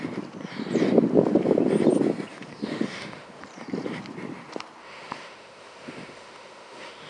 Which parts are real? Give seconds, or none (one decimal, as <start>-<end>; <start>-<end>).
0.0-2.3; 3.4-4.8